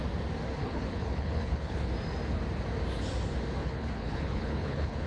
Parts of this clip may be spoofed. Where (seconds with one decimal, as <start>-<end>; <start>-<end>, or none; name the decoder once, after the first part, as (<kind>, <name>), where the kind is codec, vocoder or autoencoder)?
0.6-1.9 (codec, HILCodec); 3.6-5.1